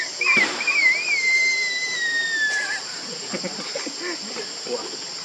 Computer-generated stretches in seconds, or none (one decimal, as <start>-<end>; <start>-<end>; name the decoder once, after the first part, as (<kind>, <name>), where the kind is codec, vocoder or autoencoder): none